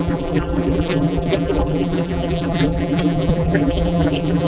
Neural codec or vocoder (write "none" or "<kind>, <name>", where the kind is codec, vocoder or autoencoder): vocoder, BigVGAN v2